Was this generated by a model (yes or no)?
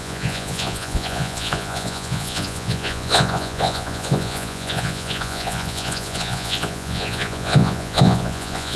yes